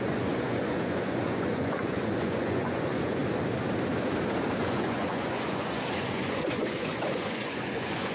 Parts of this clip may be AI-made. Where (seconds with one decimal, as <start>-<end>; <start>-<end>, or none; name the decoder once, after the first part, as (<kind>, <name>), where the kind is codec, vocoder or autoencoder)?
0.0-3.2 (vocoder, Vocos); 4.6-8.1